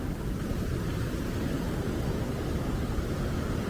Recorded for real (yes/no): yes